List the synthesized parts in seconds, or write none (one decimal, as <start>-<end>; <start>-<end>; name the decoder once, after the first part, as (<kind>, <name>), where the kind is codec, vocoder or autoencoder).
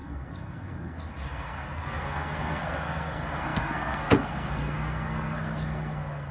0.0-6.3 (codec, SNAC)